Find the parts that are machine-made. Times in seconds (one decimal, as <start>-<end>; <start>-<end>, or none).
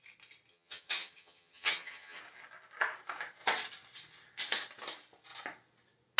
0.5-2.2